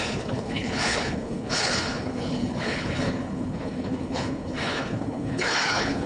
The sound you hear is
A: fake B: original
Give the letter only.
A